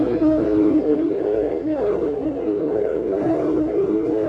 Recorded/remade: remade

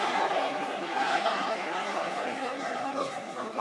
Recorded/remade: remade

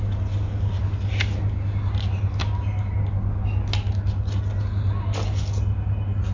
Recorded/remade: recorded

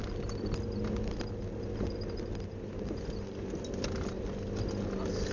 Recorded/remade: recorded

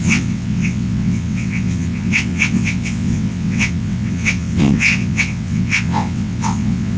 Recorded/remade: remade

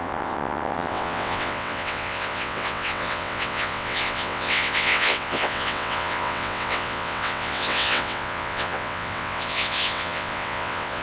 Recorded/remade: remade